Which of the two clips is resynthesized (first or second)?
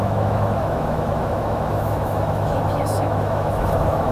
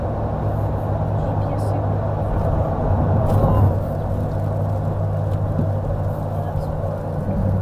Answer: first